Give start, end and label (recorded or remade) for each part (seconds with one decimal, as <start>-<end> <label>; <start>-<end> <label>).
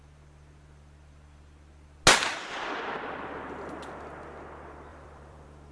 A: 0.0-4.9 recorded; 4.9-5.7 remade